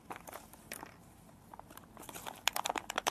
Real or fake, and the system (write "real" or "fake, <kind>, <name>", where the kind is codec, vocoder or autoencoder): real